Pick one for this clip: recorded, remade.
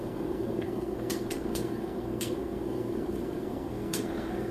remade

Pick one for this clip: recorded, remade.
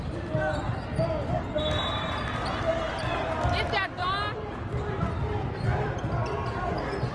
recorded